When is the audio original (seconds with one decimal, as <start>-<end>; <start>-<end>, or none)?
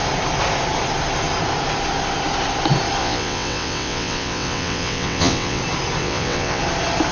0.0-3.0; 5.6-6.0; 6.6-7.1